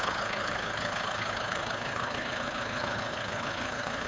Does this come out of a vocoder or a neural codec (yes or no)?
yes